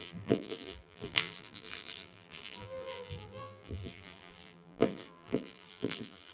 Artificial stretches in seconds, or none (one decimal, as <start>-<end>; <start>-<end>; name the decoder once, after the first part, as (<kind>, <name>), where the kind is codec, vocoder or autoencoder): 0.0-6.3 (vocoder, BigVGAN v2)